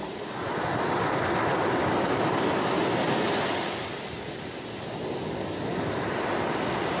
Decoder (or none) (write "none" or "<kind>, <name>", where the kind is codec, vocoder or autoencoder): none